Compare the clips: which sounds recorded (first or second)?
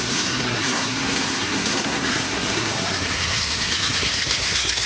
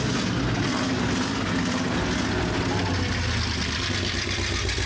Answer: second